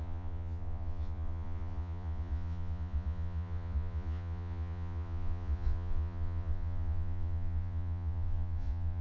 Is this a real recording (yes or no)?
no